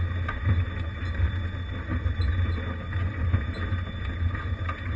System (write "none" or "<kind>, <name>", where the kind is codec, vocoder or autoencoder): none